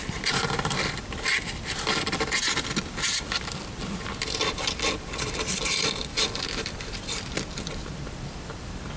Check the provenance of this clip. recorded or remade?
remade